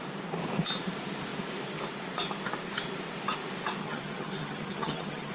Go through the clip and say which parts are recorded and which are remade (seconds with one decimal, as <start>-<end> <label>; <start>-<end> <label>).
0.0-3.8 recorded; 3.8-5.3 remade